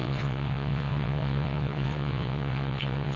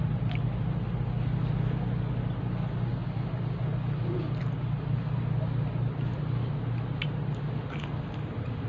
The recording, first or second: second